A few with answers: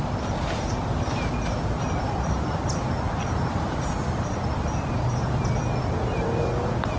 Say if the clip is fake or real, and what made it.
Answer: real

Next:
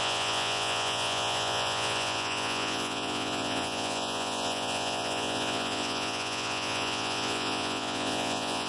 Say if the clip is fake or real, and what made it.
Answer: fake, vocoder, Vocos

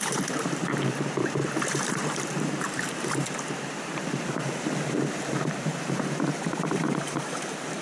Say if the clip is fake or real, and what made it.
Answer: fake, vocoder, BigVGAN v2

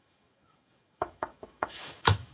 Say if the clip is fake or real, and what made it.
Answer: fake, autoencoder, DAC-VAE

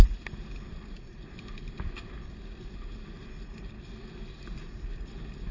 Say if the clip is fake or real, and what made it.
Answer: real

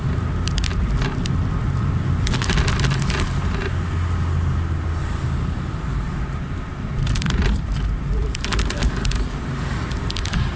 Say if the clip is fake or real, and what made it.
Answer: real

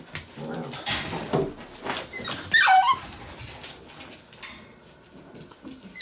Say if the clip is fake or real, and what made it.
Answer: real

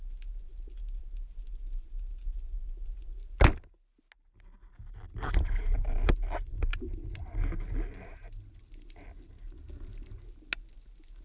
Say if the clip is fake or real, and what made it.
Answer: real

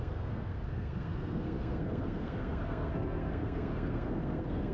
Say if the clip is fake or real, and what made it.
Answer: fake, codec, SNAC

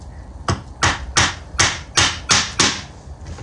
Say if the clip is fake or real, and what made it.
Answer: real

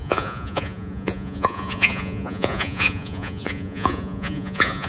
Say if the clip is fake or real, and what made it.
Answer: fake, vocoder, Vocos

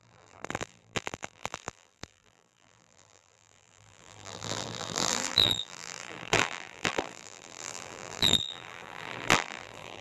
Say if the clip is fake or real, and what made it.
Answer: fake, vocoder, BigVGAN v2